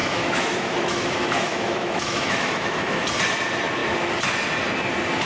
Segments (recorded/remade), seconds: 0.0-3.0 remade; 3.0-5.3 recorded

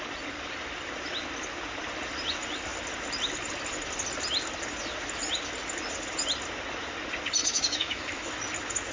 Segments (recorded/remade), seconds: 0.0-7.4 recorded; 7.4-8.3 remade; 8.3-8.9 recorded

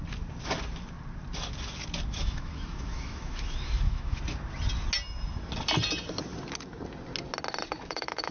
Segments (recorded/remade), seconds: 0.0-2.2 recorded; 2.2-4.2 remade; 4.2-7.7 recorded; 7.7-8.3 remade

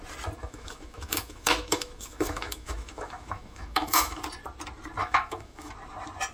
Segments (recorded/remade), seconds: 0.0-0.4 recorded; 0.4-4.2 remade; 4.2-5.0 recorded; 5.0-5.7 remade; 5.7-6.3 recorded

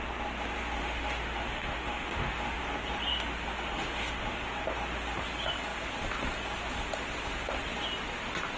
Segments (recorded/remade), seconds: 0.0-0.8 recorded; 0.8-2.6 remade; 2.6-3.1 recorded; 3.1-4.4 remade; 4.4-8.6 recorded